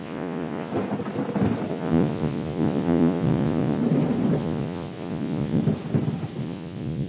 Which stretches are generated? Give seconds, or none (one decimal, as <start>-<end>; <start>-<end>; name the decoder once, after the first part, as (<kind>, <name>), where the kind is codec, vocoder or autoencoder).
0.0-0.7 (vocoder, Vocos); 1.7-3.8; 4.4-5.6; 6.4-7.1